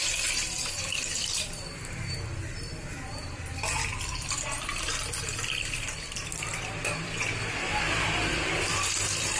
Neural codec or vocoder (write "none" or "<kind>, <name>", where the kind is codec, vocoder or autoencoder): vocoder, BigVGAN v2